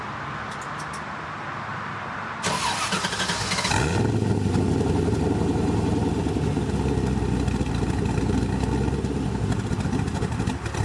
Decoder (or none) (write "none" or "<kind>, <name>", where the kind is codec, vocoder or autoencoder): none